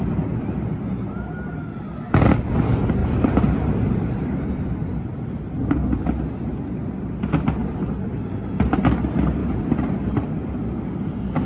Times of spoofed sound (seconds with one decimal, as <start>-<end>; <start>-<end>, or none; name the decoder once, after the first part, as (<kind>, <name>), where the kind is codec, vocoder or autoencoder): 3.0-4.5 (vocoder, BigVGAN v2); 9.4-10.3